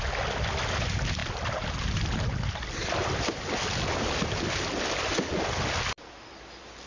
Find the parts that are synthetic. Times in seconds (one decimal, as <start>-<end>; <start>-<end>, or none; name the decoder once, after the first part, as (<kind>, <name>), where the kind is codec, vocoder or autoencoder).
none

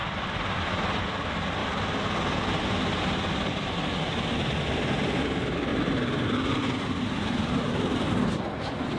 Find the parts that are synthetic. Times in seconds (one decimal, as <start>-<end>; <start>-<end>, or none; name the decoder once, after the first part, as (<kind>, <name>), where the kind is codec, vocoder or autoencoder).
5.7-6.6 (vocoder, BigVGAN v2)

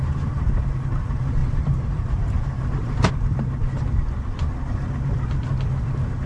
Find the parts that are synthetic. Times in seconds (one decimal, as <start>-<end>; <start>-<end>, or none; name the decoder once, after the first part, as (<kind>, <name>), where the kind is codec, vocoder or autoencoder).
1.4-3.1 (vocoder, BigVGAN v2)